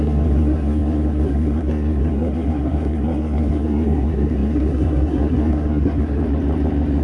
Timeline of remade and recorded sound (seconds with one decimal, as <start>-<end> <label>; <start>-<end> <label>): 0.0-6.2 remade; 6.2-7.0 recorded